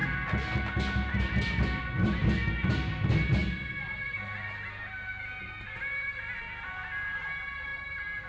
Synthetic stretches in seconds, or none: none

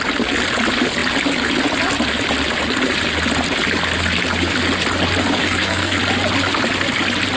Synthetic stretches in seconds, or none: 5.4-6.0 (codec, SNAC)

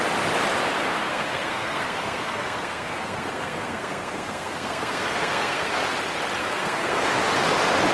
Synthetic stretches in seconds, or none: 1.1-5.8 (codec, SNAC); 6.4-7.0

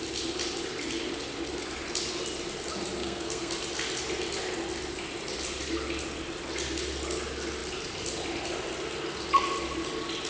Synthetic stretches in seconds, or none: 3.0-3.5 (codec, SNAC)